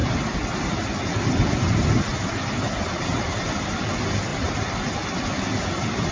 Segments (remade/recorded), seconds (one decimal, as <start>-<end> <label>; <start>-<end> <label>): 0.0-6.1 recorded